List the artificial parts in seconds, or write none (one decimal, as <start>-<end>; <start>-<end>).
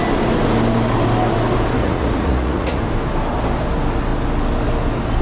1.8-2.8